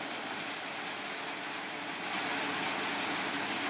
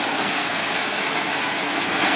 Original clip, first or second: first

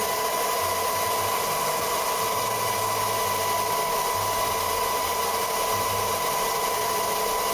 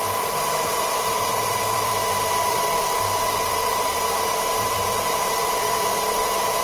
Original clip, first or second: first